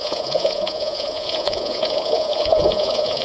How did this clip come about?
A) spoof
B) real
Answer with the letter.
A